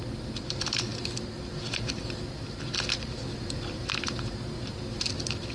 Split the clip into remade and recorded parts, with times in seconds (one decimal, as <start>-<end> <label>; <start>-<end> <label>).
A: 0.0-5.5 recorded